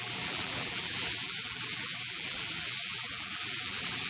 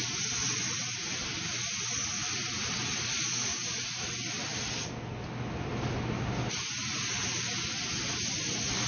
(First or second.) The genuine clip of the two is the second